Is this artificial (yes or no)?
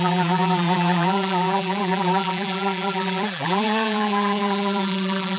yes